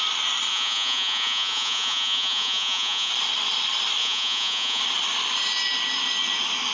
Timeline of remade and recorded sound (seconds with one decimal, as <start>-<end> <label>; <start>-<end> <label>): 0.0-0.5 recorded; 0.5-3.1 remade; 3.1-4.0 recorded; 4.0-4.8 remade; 4.8-6.7 recorded